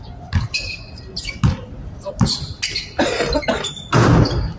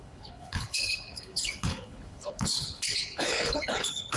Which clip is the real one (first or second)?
first